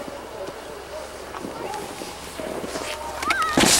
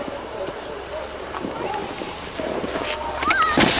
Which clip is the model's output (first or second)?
second